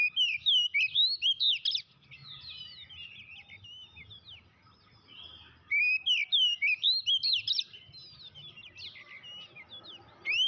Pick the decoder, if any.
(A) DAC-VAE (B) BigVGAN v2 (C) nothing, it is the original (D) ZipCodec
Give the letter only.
C